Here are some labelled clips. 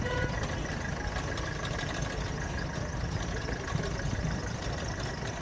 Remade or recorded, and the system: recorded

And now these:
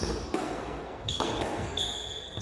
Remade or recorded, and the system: remade, codec, SNAC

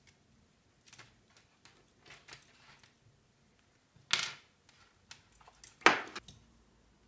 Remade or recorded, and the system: recorded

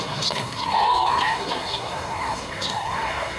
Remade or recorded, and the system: remade, codec, SNAC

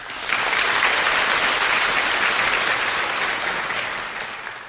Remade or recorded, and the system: recorded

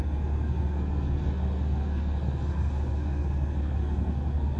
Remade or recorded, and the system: remade, codec, SNAC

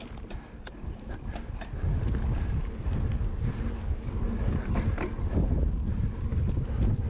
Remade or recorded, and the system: recorded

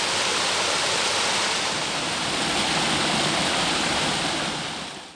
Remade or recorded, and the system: recorded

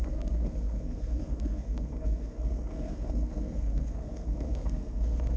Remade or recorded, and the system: remade, codec, SNAC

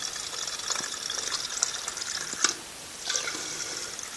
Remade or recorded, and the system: recorded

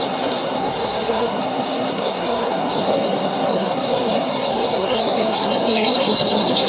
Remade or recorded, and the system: remade, codec, SNAC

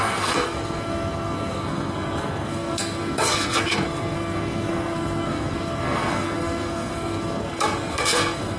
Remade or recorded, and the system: remade, codec, SNAC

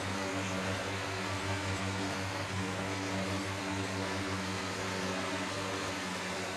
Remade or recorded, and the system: remade, codec, SNAC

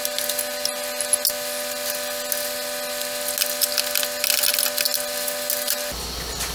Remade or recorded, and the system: recorded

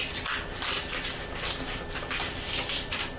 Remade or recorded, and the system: recorded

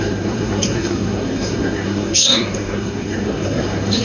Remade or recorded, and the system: remade, codec, SNAC